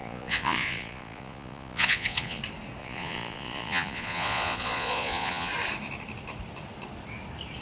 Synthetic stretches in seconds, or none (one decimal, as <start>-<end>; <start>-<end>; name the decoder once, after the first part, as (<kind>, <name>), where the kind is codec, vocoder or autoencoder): 0.0-2.4 (vocoder, Vocos); 2.8-5.5